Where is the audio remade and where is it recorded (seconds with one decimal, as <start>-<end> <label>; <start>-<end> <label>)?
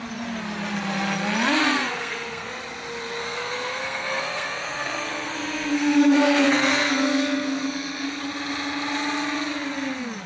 0.0-1.7 recorded; 1.7-2.5 remade; 2.5-3.2 recorded; 3.2-8.2 remade; 8.2-10.3 recorded